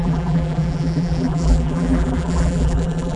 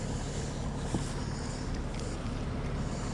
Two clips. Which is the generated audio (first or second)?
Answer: first